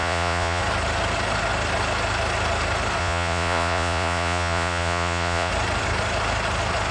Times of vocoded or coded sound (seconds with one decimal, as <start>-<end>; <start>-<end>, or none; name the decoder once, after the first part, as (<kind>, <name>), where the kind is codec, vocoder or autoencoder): 0.0-0.6 (vocoder, Vocos); 3.0-5.5